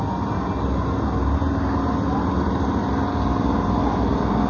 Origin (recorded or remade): recorded